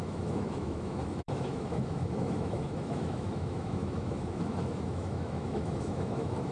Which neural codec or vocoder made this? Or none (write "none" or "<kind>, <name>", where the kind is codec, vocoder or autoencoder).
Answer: autoencoder, DAC-VAE